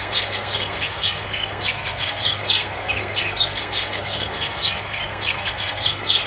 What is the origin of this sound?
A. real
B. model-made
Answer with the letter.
B